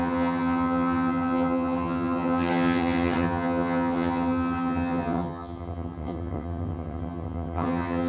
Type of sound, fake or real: fake